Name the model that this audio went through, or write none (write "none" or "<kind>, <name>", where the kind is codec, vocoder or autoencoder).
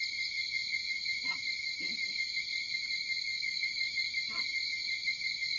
none